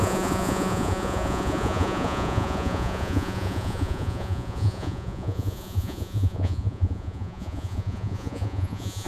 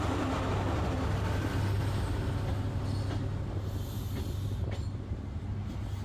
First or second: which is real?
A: second